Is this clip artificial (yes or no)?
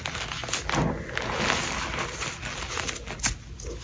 no